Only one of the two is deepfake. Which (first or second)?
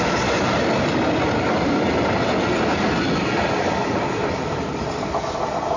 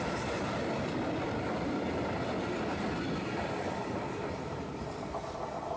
second